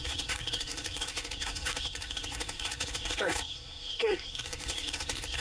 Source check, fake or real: fake